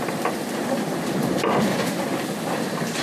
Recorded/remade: remade